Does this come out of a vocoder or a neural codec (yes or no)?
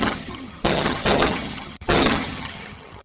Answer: yes